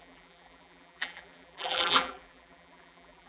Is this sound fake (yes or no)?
yes